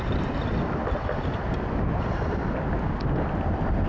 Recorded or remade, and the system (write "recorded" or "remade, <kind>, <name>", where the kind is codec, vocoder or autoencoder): recorded